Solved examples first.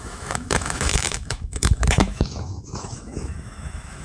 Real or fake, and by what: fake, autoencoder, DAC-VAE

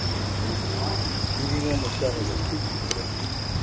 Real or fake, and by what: real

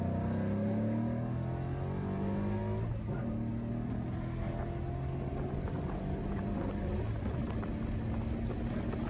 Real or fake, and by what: real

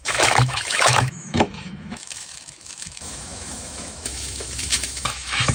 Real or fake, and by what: fake, autoencoder, DAC-VAE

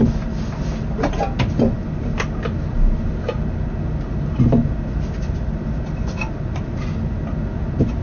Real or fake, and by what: real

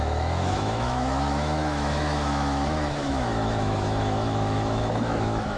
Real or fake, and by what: fake, autoencoder, DAC-VAE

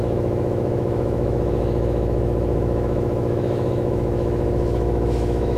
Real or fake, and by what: fake, autoencoder, DAC-VAE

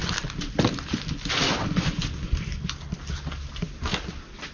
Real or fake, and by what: real